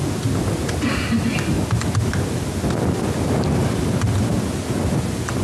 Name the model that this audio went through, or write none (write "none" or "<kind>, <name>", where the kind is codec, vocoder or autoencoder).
none